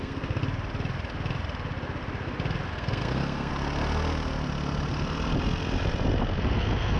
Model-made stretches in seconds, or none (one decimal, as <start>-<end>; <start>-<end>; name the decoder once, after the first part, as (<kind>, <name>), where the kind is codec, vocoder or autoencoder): 0.0-0.4 (codec, SNAC); 2.7-3.5; 6.4-7.0